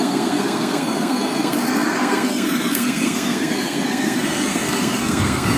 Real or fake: fake